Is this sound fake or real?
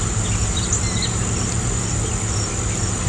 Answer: real